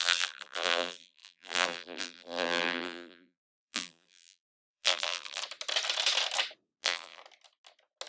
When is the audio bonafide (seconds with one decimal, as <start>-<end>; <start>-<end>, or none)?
5.4-6.8; 7.2-8.1